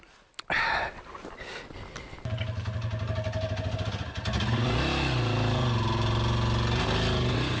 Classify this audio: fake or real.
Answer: real